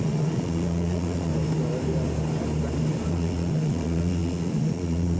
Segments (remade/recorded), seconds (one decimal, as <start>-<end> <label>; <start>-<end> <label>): 0.0-1.3 remade; 1.3-3.1 recorded; 3.1-5.2 remade